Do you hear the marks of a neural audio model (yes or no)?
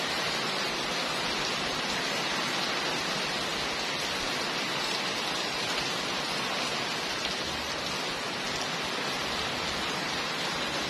no